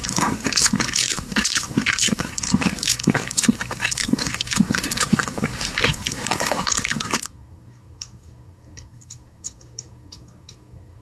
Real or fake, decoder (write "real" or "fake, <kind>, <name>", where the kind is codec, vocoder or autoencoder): fake, codec, SNAC